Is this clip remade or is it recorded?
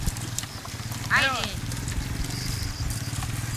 recorded